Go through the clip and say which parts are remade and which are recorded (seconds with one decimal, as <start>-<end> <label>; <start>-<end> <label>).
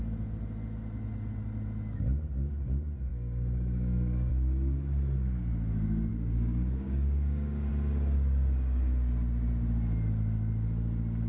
0.0-3.1 recorded; 3.1-4.3 remade; 4.3-6.1 recorded; 6.1-7.7 remade; 7.7-11.3 recorded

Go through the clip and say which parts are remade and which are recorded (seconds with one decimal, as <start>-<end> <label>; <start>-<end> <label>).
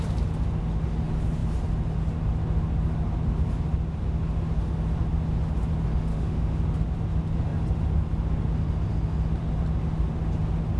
0.0-6.1 recorded; 6.1-6.6 remade; 6.6-10.8 recorded